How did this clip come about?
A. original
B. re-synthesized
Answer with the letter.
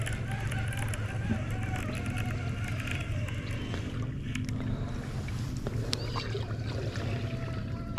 A